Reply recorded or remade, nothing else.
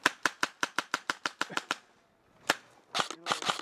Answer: recorded